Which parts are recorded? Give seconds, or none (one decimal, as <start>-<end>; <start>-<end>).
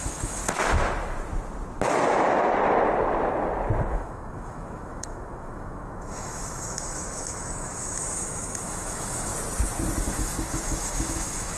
0.4-3.9; 9.3-10.0